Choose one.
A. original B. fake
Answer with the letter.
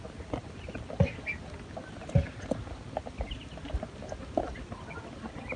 A